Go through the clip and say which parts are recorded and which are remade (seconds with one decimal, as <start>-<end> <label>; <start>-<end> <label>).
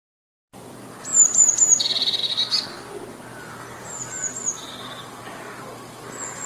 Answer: 0.0-1.1 recorded; 1.1-1.8 remade; 1.8-6.5 recorded